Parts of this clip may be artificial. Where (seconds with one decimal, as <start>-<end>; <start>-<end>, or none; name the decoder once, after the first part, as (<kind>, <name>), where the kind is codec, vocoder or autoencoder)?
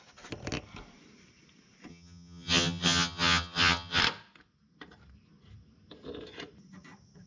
1.9-4.0 (vocoder, HiFi-GAN)